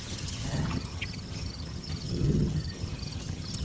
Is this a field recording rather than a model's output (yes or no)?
no